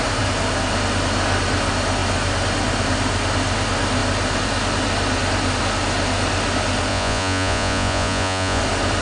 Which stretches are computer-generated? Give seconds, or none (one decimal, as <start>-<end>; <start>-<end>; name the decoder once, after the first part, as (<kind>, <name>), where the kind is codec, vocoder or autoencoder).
6.9-8.6 (vocoder, Vocos)